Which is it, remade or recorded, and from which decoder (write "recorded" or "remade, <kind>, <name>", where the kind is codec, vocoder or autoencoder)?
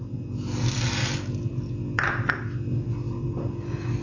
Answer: recorded